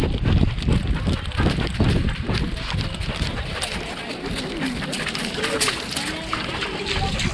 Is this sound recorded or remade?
recorded